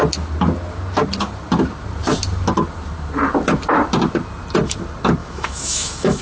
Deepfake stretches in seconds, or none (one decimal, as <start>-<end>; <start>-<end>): 5.2-6.2